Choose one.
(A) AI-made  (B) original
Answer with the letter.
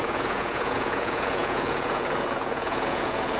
A